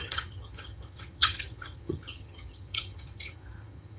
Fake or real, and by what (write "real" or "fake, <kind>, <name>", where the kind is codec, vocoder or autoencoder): fake, vocoder, HiFi-GAN